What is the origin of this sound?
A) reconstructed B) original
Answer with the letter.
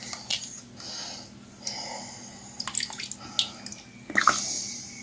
B